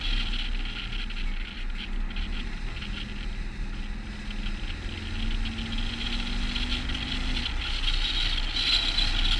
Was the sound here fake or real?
real